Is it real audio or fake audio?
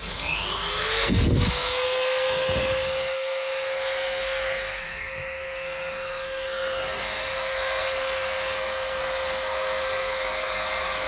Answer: fake